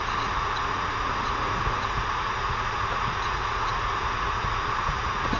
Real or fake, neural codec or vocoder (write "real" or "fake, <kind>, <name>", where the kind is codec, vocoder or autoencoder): fake, vocoder, Vocos